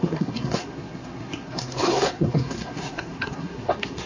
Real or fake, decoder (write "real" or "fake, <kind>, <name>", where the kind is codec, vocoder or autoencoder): fake, codec, SNAC